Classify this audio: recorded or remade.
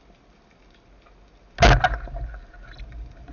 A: recorded